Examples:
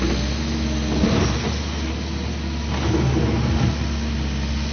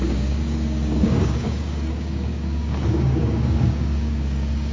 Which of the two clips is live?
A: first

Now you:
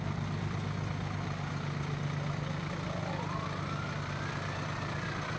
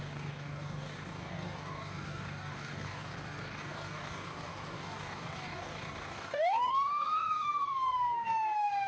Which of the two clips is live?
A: first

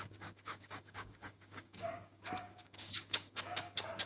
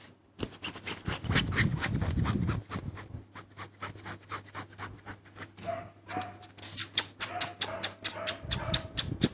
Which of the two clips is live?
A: second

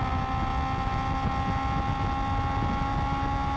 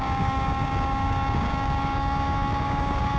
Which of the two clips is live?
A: first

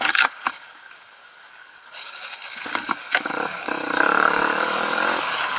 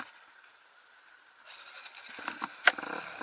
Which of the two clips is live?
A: second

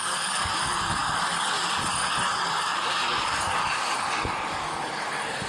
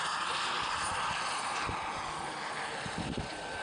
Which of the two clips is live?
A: second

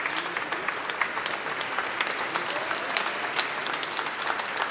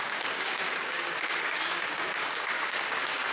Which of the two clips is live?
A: first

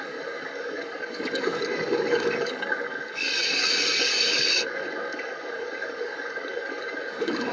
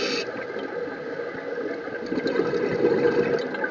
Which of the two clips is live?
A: second